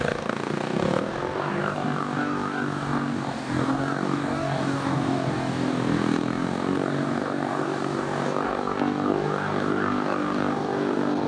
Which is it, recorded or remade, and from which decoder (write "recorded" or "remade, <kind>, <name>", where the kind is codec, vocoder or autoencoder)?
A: remade, codec, DAC